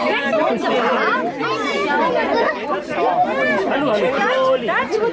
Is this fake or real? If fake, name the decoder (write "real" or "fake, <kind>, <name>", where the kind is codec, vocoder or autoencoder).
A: real